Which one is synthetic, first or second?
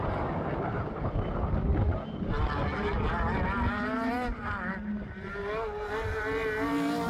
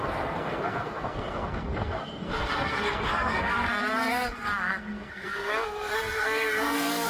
second